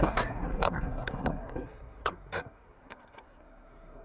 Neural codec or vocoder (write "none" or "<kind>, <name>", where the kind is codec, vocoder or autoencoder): codec, SNAC